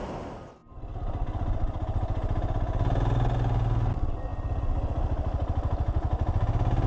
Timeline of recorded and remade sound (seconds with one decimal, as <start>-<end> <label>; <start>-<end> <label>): 0.0-6.9 recorded

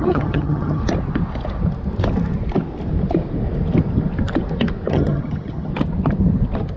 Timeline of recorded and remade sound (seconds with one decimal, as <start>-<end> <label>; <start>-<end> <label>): 0.0-0.8 remade; 0.8-4.9 recorded; 4.9-5.7 remade; 5.7-6.8 recorded

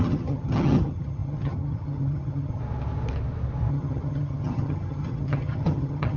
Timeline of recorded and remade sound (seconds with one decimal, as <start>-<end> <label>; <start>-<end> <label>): 0.0-2.6 remade; 2.6-3.7 recorded; 3.7-6.2 remade

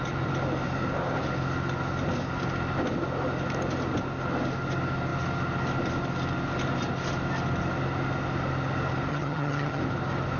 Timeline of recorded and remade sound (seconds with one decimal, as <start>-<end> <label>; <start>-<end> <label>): 0.0-9.1 recorded; 9.1-9.8 remade; 9.8-10.4 recorded